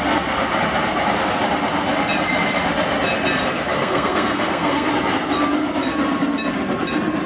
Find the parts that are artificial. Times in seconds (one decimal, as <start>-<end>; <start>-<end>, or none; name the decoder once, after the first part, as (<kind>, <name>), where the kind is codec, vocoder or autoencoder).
3.8-4.9 (codec, SNAC)